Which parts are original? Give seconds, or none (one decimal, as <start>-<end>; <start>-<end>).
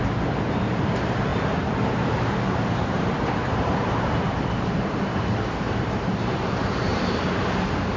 none